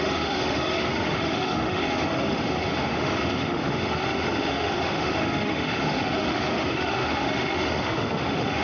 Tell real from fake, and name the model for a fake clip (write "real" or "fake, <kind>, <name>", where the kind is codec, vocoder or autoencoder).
fake, autoencoder, DAC-VAE